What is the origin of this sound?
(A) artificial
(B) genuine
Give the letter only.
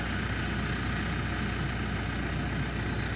B